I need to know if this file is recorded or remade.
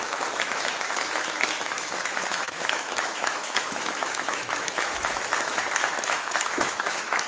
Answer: remade